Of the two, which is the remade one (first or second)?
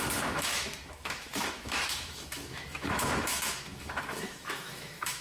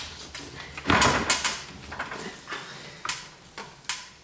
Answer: first